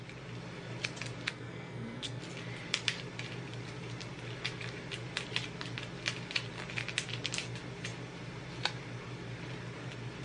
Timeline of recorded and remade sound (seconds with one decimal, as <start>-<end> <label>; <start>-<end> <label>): 0.0-1.3 recorded; 1.3-2.2 remade; 2.2-10.2 recorded